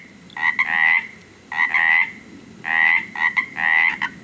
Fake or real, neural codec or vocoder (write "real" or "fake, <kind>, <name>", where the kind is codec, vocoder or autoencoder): real